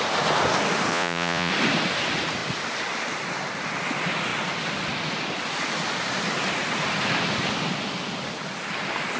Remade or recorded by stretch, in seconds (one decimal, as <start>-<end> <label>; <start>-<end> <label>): 0.0-0.9 recorded; 0.9-1.5 remade; 1.5-9.2 recorded